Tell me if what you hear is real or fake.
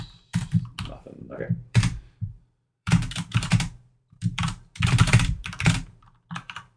fake